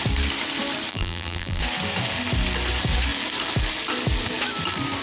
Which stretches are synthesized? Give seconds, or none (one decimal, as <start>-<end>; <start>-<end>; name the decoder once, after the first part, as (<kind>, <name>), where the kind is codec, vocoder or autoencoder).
0.9-1.6 (vocoder, BigVGAN v2)